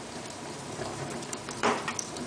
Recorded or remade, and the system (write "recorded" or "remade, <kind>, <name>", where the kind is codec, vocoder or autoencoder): remade, vocoder, BigVGAN v2